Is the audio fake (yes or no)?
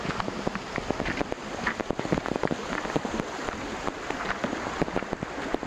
no